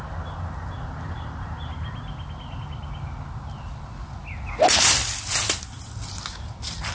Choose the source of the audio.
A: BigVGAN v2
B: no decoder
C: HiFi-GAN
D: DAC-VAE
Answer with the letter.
B